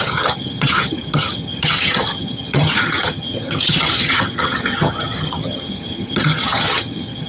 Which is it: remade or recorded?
remade